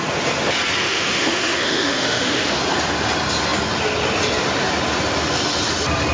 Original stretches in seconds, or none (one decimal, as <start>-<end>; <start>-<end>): 0.0-0.8; 2.6-6.1